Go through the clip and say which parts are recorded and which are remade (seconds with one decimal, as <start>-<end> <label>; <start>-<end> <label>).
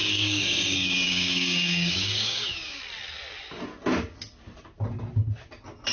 0.0-2.8 remade; 2.8-5.9 recorded